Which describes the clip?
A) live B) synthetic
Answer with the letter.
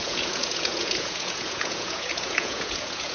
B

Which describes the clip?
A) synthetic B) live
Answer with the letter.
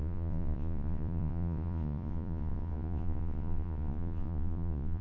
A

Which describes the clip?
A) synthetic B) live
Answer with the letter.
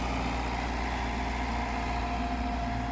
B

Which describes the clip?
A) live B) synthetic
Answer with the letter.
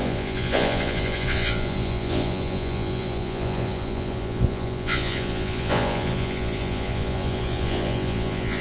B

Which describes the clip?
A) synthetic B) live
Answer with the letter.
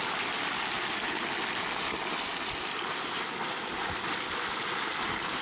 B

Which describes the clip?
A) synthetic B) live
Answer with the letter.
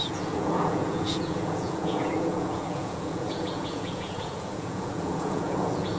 A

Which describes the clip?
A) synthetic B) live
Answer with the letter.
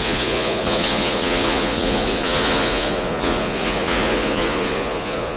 A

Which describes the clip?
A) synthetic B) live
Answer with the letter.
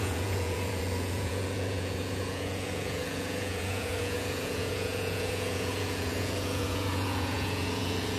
A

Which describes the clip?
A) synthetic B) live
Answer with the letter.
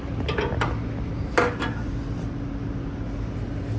B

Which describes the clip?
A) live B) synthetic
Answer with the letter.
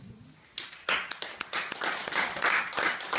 A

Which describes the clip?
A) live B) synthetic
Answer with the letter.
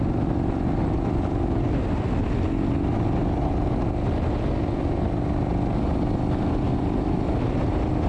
A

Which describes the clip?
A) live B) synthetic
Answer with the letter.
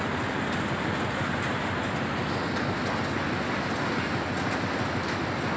A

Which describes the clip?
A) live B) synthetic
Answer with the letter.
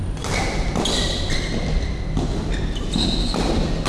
A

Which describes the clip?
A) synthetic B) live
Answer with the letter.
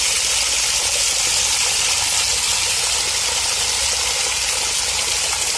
B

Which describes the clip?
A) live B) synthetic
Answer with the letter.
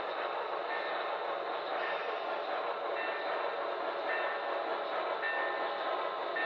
A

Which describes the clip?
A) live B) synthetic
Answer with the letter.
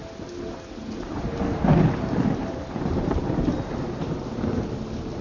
A